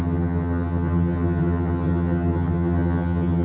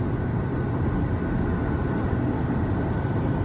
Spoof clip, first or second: first